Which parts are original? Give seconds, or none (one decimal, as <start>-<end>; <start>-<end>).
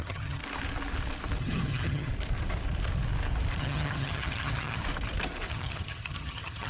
0.4-1.4; 2.1-3.6; 4.8-5.5